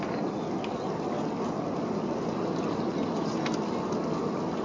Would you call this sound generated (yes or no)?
no